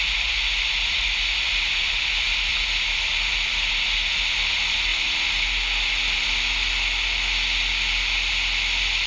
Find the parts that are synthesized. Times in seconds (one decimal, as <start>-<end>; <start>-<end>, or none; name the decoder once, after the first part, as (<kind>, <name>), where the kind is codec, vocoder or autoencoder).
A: none